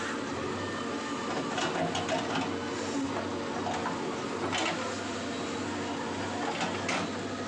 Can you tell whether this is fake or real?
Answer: real